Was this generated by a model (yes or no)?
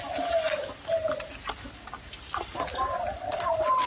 no